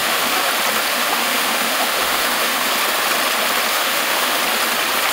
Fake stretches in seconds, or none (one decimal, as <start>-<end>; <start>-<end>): 0.0-0.5; 0.9-2.7; 3.7-4.4